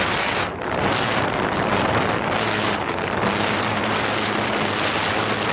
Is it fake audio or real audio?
real